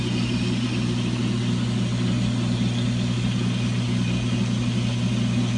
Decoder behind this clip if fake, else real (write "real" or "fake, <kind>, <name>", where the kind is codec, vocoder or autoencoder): real